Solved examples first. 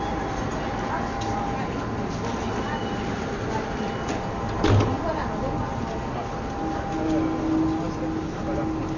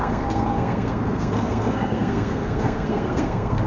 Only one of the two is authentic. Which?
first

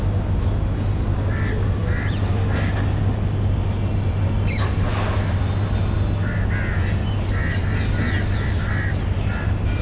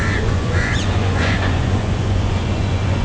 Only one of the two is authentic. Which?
first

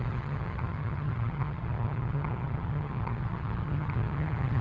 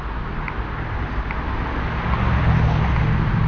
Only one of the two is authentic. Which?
second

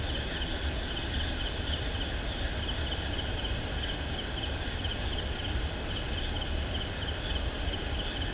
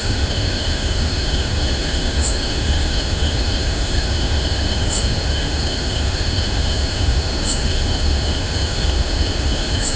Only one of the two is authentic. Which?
first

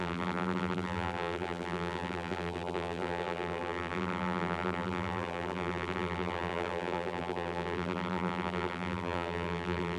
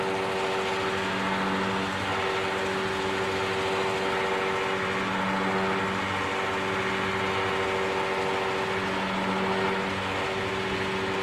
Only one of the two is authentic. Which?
second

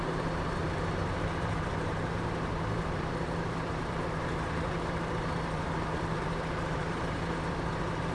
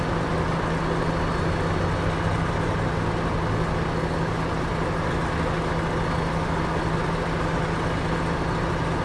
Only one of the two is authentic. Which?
second